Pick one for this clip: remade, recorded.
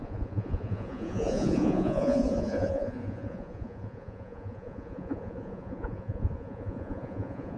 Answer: remade